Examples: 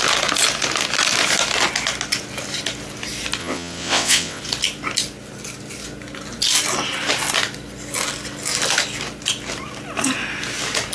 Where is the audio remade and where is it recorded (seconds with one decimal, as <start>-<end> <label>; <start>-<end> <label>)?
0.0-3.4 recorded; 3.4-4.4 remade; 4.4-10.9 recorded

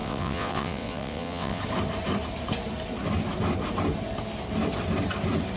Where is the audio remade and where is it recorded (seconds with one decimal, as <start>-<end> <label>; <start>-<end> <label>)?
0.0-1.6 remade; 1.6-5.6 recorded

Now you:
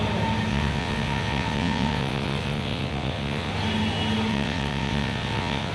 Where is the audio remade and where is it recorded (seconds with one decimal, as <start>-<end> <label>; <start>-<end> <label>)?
0.0-0.5 recorded; 0.5-3.5 remade; 3.5-4.3 recorded; 4.3-5.7 remade

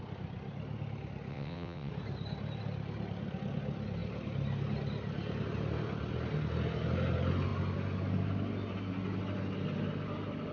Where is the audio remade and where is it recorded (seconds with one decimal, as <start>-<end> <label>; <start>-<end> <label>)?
0.0-1.3 recorded; 1.3-1.9 remade; 1.9-10.5 recorded

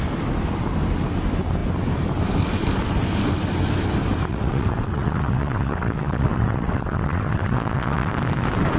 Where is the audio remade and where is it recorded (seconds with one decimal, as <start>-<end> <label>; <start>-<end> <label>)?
0.0-4.3 recorded; 4.3-8.1 remade; 8.1-8.8 recorded

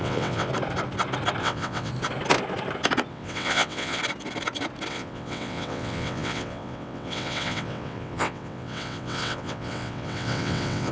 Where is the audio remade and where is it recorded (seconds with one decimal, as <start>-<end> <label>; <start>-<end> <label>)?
0.0-0.5 remade; 0.5-1.4 recorded; 1.4-1.9 remade; 1.9-3.1 recorded; 3.1-4.0 remade; 4.0-4.9 recorded; 4.9-10.9 remade